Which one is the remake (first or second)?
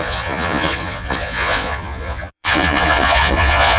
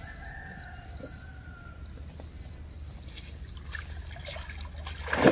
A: first